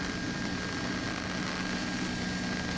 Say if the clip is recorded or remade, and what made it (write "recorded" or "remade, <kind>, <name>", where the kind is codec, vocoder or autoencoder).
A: recorded